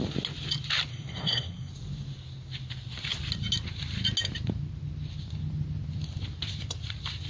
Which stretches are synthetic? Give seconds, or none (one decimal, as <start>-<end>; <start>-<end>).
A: 0.9-1.7